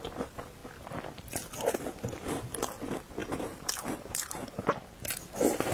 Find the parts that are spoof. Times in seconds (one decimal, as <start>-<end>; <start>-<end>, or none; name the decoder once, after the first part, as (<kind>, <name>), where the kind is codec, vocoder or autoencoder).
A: 3.2-4.7 (vocoder, BigVGAN v2)